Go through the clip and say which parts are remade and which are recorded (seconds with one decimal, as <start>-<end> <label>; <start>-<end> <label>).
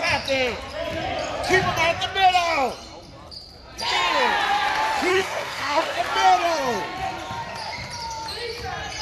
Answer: 0.0-5.1 recorded; 5.1-6.0 remade; 6.0-9.0 recorded